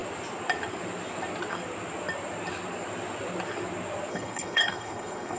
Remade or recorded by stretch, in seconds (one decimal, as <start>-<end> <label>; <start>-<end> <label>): 0.0-4.1 recorded; 4.1-5.4 remade